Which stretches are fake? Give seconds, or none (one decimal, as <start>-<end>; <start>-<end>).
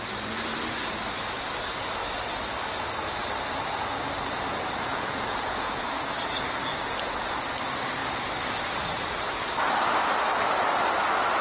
4.9-5.8